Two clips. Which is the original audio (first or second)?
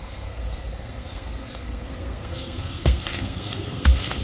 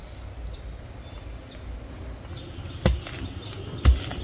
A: second